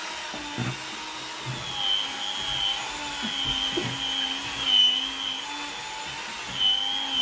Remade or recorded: recorded